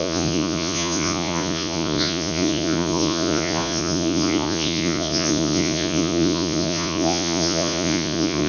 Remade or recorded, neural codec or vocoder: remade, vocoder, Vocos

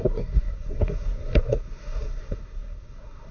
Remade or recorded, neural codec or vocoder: remade, codec, SNAC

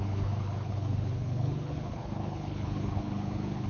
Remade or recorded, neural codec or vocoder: remade, codec, HILCodec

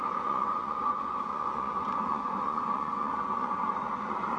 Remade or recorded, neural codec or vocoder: remade, vocoder, Vocos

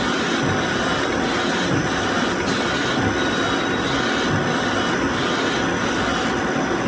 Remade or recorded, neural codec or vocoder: recorded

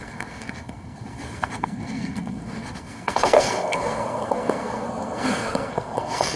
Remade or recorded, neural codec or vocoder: remade, codec, SNAC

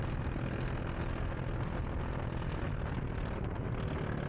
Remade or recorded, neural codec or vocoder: recorded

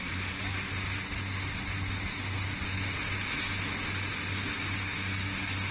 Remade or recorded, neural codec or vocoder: recorded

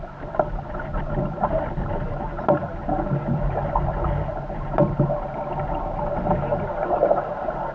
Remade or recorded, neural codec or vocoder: recorded